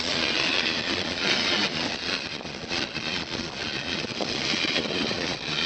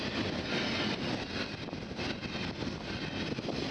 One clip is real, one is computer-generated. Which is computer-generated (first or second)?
first